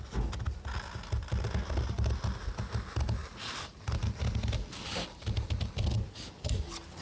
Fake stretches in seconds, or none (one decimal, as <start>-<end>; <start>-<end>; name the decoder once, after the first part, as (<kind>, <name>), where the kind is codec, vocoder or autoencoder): none